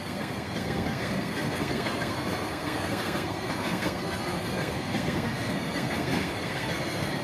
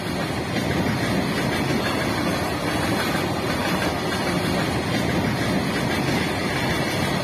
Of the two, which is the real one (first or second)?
second